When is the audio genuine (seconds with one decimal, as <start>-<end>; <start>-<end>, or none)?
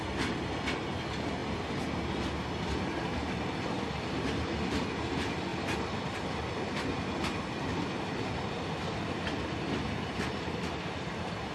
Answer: 0.0-11.5